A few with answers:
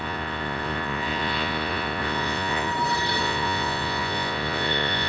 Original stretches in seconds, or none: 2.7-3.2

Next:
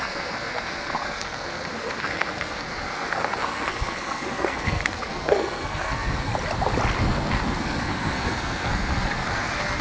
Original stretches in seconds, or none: 6.3-7.0

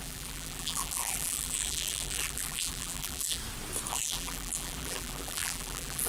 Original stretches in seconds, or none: 3.4-3.9

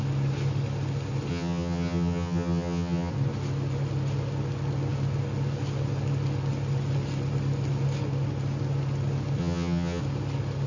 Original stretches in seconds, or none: 0.0-1.3; 3.1-9.4; 10.0-10.7

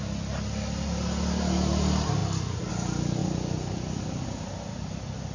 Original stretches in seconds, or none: 0.0-5.3

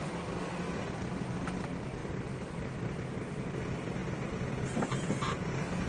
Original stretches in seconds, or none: 0.0-5.9

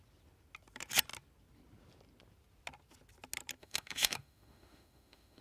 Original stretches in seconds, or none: 0.0-3.6

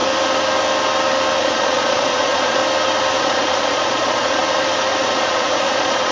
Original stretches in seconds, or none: 0.0-1.4; 2.6-3.2; 4.4-5.0